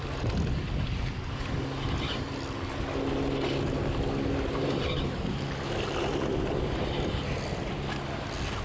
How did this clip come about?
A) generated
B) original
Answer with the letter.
B